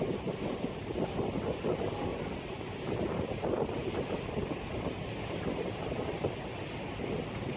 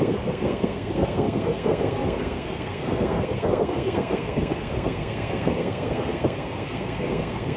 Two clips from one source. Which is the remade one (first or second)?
second